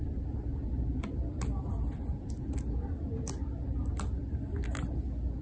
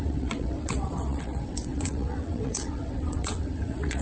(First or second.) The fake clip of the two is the second